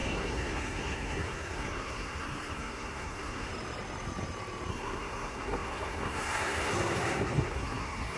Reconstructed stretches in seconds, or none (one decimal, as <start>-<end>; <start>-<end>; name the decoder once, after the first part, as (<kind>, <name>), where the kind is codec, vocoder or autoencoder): 0.0-3.5 (codec, SNAC); 4.7-8.2